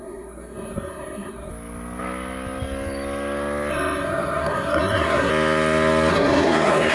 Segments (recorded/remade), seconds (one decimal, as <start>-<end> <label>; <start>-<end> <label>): 0.0-1.5 remade; 1.5-3.7 recorded; 3.7-5.3 remade; 5.3-6.1 recorded; 6.1-6.9 remade